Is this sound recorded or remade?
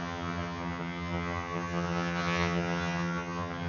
remade